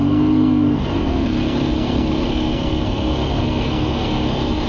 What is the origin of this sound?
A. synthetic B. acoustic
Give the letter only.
A